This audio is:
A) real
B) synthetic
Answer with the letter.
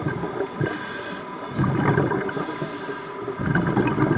A